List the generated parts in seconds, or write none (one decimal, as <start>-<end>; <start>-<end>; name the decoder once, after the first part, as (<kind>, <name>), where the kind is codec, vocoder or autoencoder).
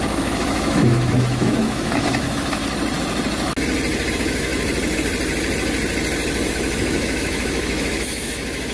0.0-2.6 (autoencoder, DAC-VAE); 4.1-4.5; 6.5-8.7